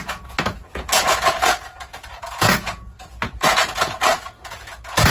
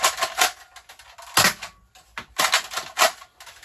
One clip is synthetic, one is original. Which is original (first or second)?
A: second